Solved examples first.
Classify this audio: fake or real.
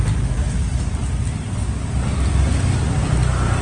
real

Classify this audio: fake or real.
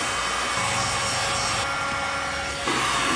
real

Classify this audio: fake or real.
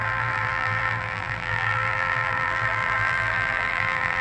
fake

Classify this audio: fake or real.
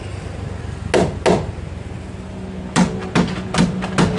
real